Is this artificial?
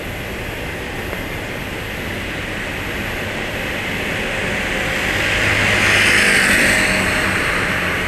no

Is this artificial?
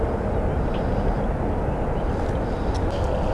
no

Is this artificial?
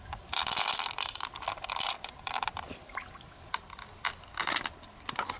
yes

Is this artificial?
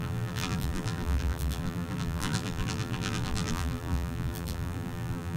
yes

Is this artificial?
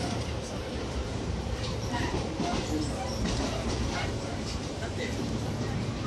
yes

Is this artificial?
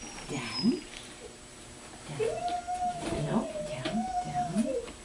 yes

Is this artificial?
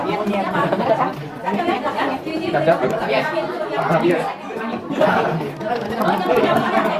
no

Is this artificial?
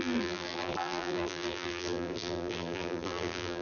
yes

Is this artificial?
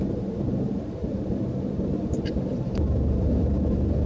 yes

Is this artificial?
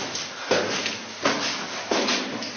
no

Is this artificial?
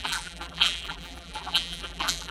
yes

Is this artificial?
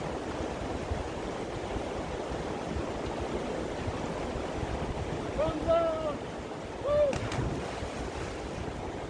no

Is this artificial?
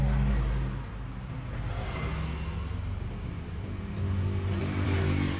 no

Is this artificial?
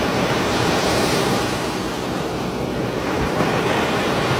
no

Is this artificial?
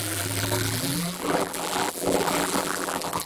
yes